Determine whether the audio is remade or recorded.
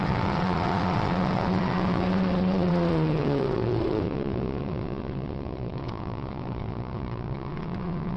remade